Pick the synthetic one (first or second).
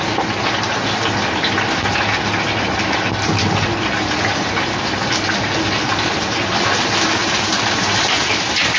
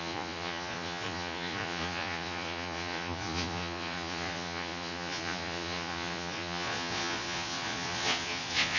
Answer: second